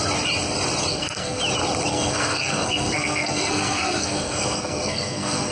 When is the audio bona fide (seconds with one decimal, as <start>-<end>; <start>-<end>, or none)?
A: 0.0-0.9; 1.4-1.9